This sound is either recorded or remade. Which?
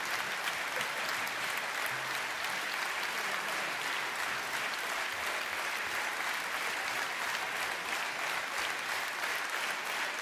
recorded